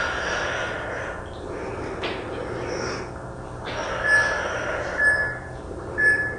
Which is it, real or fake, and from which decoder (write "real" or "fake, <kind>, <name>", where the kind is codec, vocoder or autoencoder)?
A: real